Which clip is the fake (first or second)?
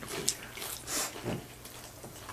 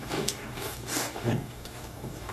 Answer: second